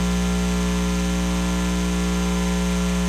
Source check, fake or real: real